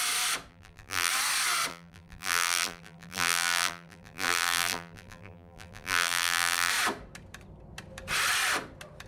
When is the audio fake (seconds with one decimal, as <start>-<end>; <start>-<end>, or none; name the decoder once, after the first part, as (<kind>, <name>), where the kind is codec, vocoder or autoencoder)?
0.5-1.1 (vocoder, BigVGAN v2); 1.7-6.7